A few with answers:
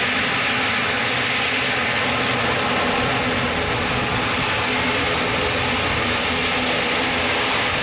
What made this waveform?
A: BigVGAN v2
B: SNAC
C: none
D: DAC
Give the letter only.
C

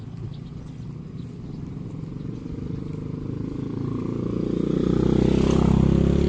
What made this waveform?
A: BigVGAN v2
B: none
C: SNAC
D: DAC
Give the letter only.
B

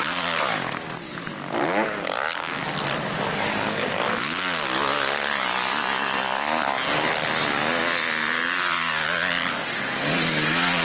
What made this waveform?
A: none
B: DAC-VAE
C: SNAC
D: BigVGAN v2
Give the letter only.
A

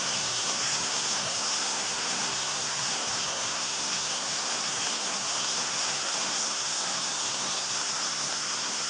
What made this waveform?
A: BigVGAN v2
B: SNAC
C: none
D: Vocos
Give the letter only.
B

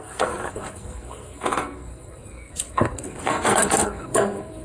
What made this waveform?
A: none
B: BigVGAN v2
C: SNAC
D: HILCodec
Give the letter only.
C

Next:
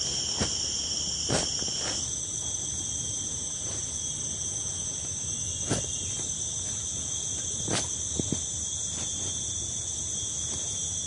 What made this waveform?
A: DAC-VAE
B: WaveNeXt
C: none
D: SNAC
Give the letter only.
C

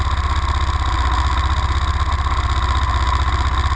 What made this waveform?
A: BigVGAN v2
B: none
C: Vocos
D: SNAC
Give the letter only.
B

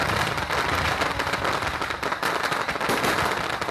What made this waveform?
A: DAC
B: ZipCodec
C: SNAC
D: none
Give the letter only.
D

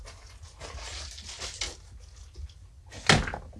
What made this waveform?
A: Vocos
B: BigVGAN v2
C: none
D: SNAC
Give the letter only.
C